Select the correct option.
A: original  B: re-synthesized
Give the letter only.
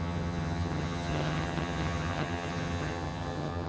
B